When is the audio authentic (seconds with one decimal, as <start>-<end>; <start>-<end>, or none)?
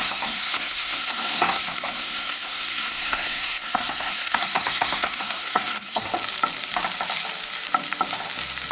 6.1-8.7